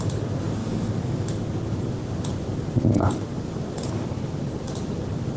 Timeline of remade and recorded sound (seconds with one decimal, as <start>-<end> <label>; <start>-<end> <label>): 0.0-0.6 recorded; 0.6-1.4 remade; 1.4-5.4 recorded